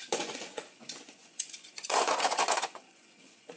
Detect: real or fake fake